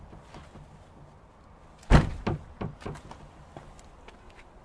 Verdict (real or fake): real